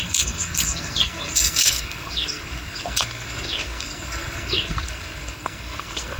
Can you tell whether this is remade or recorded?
remade